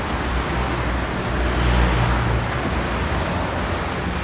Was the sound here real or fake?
real